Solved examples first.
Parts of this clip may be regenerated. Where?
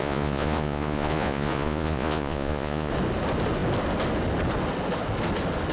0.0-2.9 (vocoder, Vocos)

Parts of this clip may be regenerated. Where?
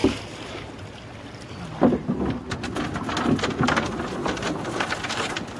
none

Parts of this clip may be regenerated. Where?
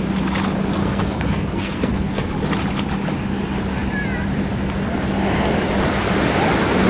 0.8-2.3 (codec, SNAC)